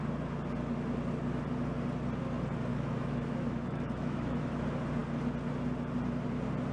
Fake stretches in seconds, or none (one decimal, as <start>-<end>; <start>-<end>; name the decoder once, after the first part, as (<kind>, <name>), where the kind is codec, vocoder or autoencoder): 2.7-4.6 (autoencoder, DAC-VAE)